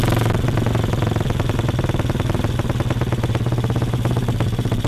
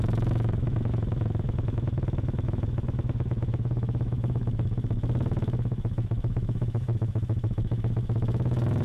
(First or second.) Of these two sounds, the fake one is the second